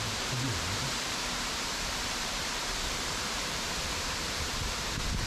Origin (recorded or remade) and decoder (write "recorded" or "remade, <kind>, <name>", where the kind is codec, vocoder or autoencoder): remade, vocoder, BigVGAN v2